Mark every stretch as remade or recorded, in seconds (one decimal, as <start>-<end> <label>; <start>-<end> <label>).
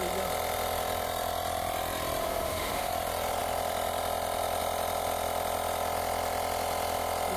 0.0-2.2 recorded; 2.2-2.9 remade; 2.9-7.4 recorded